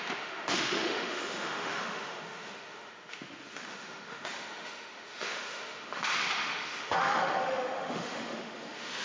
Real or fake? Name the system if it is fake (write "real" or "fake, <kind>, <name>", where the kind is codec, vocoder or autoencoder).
fake, autoencoder, DAC-VAE